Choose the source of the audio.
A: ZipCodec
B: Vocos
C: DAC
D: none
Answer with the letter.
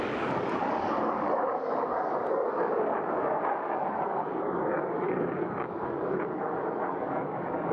C